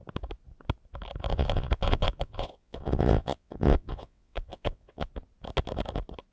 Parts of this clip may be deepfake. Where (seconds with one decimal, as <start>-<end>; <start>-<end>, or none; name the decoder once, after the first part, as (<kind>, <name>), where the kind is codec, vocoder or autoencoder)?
1.3-5.1 (vocoder, WaveNeXt)